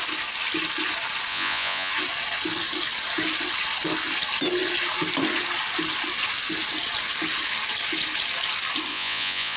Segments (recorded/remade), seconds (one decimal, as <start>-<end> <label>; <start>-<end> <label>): 0.0-1.3 recorded; 1.3-1.9 remade; 1.9-8.9 recorded; 8.9-9.6 remade